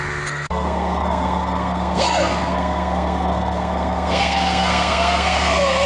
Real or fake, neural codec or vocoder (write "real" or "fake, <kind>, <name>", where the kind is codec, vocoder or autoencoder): fake, codec, SNAC